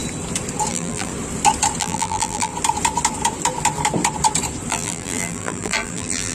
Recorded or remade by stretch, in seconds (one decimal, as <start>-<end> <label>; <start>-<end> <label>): 0.0-0.7 recorded; 0.7-1.1 remade; 1.1-1.8 recorded; 1.8-2.5 remade; 2.5-4.7 recorded; 4.7-6.3 remade